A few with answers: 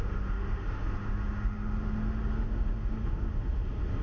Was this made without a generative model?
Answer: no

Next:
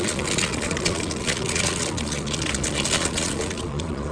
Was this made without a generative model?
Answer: no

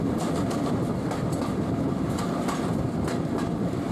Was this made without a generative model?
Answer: yes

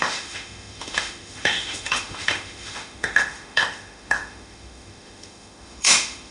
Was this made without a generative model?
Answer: no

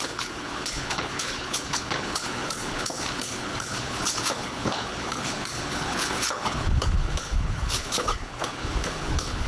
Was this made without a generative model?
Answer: no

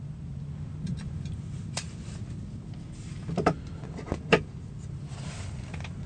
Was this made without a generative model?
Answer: yes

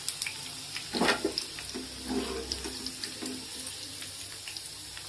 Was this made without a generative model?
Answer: yes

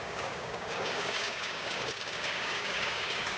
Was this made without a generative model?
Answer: no